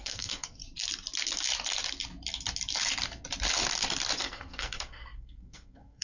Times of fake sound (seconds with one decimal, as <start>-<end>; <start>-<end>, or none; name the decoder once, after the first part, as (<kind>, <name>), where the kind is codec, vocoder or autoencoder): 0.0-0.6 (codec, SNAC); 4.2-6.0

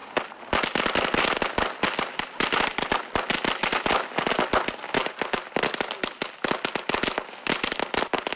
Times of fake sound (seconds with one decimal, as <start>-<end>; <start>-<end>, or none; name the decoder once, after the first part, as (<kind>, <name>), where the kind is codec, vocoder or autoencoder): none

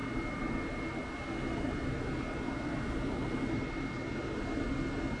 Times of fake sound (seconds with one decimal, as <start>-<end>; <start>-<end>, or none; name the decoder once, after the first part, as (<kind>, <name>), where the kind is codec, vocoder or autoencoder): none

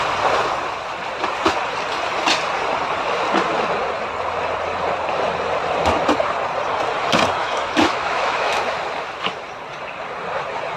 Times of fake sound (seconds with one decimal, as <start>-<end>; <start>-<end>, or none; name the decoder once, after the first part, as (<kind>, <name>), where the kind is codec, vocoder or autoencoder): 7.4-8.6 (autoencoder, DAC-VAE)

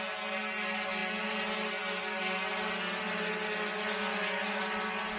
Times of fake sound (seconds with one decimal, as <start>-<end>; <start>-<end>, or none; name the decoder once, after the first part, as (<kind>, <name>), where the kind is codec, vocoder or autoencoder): none

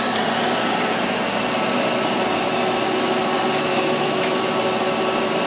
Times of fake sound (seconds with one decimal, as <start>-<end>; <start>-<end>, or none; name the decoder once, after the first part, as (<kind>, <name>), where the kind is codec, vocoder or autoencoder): 3.7-4.4 (autoencoder, DAC-VAE)